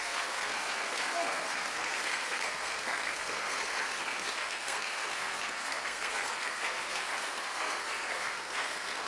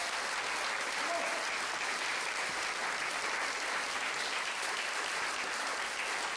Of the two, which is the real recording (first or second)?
second